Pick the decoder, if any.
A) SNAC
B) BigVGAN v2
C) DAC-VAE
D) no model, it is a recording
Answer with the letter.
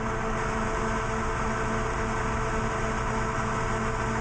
D